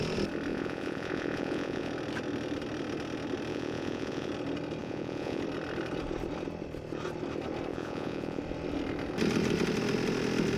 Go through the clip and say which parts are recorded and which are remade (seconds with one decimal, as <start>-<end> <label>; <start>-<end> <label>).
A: 0.0-0.5 recorded; 0.5-1.9 remade; 1.9-3.5 recorded; 3.5-4.3 remade; 4.3-4.8 recorded; 4.8-5.4 remade; 5.4-7.7 recorded; 7.7-8.4 remade; 8.4-10.6 recorded